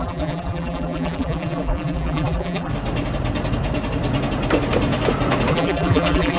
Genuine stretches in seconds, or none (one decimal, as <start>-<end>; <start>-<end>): 2.7-5.5